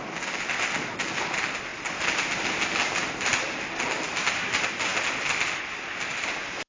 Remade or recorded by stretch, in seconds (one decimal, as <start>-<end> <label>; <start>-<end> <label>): 0.0-6.7 recorded